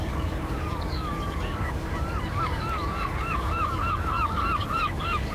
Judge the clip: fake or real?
fake